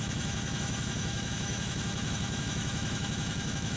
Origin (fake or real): fake